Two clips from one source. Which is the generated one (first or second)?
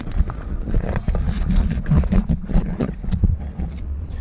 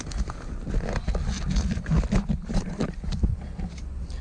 first